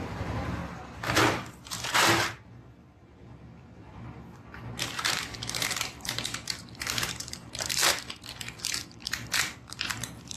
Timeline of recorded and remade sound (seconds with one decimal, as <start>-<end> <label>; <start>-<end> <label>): 0.0-0.6 remade; 0.6-1.7 recorded; 1.7-7.8 remade; 7.8-8.4 recorded; 8.4-10.4 remade